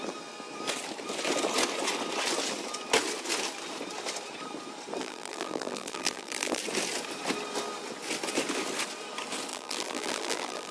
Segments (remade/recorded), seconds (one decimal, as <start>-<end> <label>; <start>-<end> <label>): 0.0-5.0 recorded; 5.0-6.6 remade; 6.6-9.5 recorded; 9.5-10.7 remade